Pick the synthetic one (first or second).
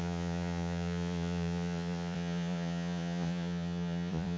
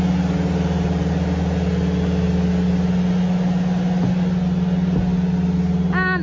first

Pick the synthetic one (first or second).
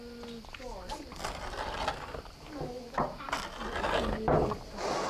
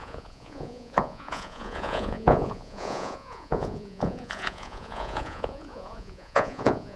second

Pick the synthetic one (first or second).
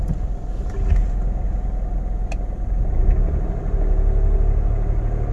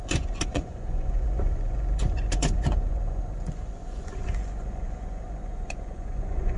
second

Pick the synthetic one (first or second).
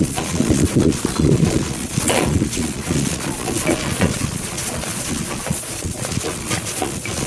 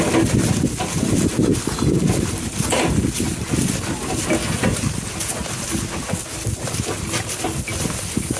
first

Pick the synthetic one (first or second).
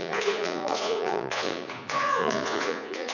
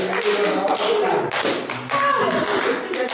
first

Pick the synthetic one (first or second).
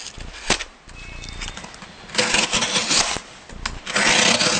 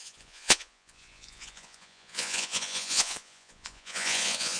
second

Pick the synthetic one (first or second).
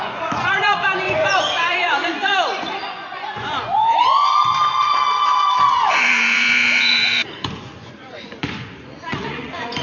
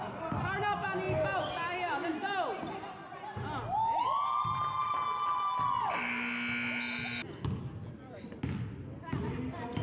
first